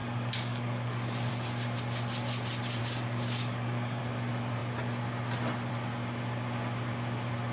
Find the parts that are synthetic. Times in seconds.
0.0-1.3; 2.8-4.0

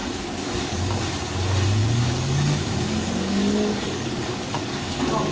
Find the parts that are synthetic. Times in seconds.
0.0-1.0; 1.8-5.3

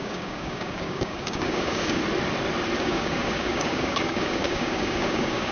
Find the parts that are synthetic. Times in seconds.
0.0-2.0; 2.8-5.5

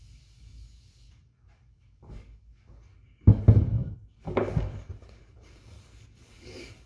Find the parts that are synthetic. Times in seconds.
0.0-6.9

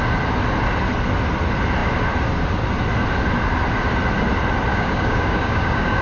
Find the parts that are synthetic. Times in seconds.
4.7-6.0

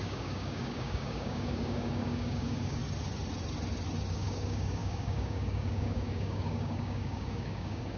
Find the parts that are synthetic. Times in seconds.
0.0-2.8; 4.1-8.0